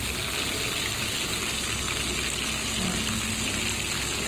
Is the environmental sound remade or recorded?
recorded